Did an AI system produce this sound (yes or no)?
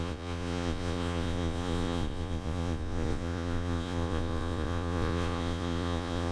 yes